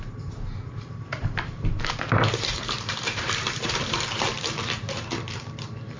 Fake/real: fake